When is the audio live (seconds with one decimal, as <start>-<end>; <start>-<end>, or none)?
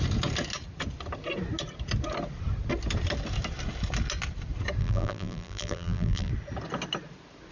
0.0-4.8; 6.3-7.5